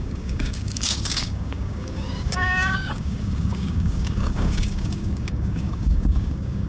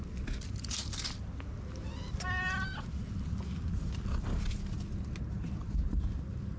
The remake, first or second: first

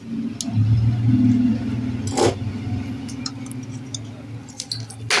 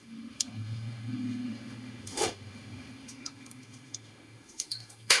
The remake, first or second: second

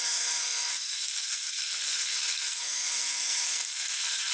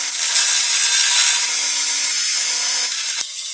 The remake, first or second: first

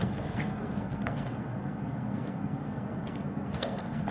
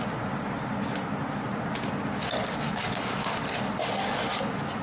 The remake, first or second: first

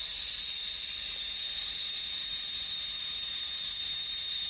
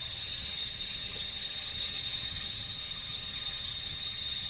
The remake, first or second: second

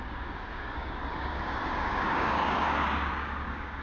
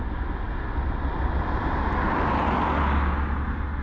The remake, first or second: first